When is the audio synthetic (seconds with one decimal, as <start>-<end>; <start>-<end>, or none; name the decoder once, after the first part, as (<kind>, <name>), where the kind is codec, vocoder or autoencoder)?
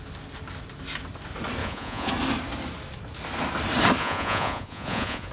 1.6-2.1 (vocoder, Vocos); 4.0-5.3